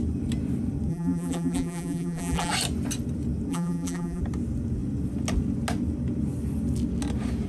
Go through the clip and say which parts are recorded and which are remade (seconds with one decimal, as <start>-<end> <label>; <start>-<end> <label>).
0.0-0.9 recorded; 0.9-2.5 remade; 2.5-3.5 recorded; 3.5-4.2 remade; 4.2-7.5 recorded